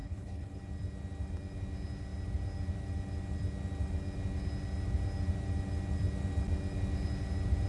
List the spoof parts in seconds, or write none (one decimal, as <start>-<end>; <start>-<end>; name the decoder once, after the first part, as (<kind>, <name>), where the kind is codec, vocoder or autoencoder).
0.0-0.6 (codec, HILCodec)